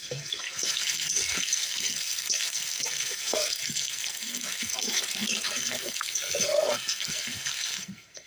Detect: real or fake fake